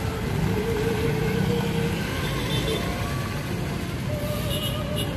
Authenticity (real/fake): real